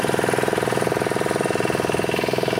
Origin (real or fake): real